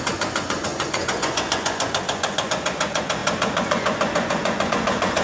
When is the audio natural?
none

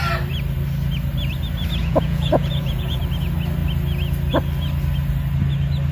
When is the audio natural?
0.0-1.8; 3.0-5.9

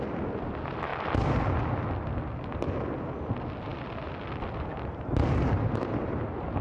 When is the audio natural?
0.0-6.6

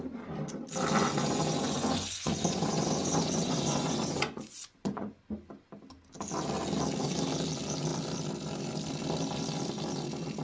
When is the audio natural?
0.0-1.0; 5.2-10.4

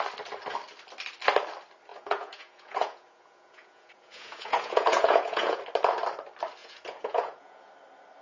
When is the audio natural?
0.0-1.9; 5.6-6.6; 7.7-8.2

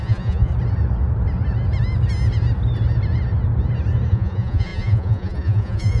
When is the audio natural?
0.5-4.1

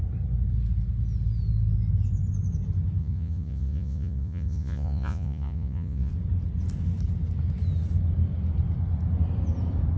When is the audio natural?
0.0-3.0; 6.1-10.0

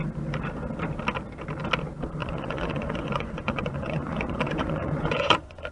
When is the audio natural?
0.0-2.2